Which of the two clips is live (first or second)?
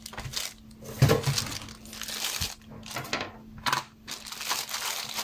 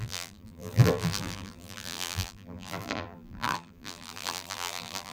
first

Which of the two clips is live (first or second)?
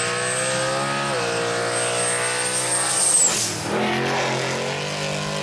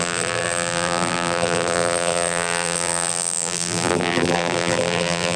first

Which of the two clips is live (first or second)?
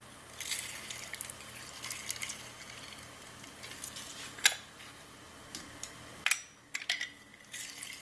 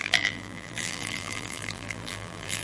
first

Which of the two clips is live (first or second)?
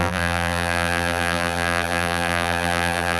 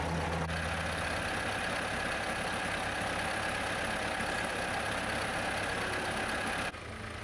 second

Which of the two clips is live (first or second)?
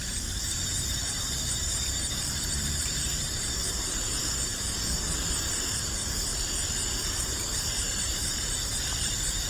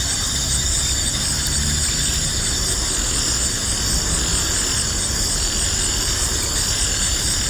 second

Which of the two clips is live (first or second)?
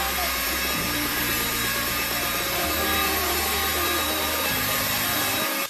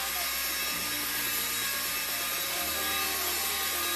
second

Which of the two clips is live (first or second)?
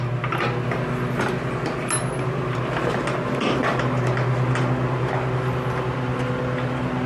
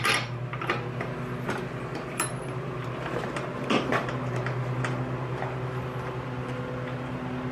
first